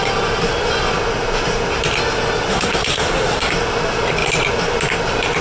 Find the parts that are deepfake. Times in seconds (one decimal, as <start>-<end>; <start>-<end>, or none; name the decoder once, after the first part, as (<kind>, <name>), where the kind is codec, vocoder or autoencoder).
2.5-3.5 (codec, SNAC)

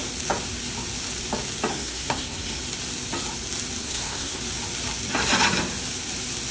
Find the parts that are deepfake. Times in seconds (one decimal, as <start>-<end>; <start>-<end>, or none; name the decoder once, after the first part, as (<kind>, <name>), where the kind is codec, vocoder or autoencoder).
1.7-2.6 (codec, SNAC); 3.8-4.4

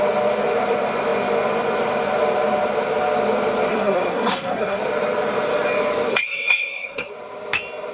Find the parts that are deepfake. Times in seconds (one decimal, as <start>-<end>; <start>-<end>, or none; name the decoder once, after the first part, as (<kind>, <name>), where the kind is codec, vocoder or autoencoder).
3.7-4.8 (codec, SNAC); 6.1-7.1

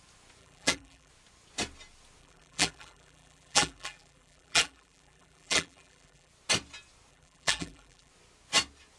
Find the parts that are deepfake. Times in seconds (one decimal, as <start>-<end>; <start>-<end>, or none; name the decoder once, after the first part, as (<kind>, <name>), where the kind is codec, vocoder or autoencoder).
0.4-1.1 (vocoder, BigVGAN v2); 2.2-6.3; 7.1-8.1

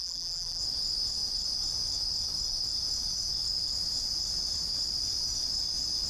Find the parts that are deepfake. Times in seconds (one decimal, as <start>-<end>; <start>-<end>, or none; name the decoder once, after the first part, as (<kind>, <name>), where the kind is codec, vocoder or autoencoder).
0.0-0.6 (vocoder, BigVGAN v2)

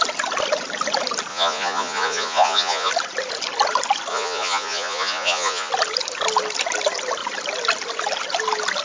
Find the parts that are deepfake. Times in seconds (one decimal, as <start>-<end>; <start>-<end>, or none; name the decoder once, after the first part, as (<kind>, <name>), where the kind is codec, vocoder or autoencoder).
1.3-2.9 (vocoder, Vocos); 4.1-5.7